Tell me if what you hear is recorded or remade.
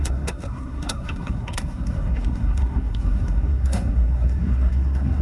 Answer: remade